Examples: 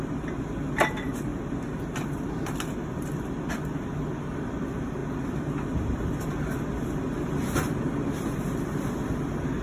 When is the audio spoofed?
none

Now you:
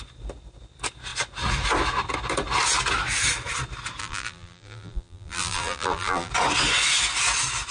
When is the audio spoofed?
4.0-6.3 (vocoder, BigVGAN v2)

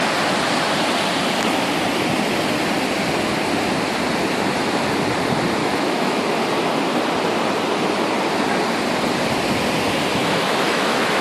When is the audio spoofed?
5.6-6.2 (autoencoder, DAC-VAE); 10.1-11.2